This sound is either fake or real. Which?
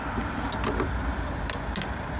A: real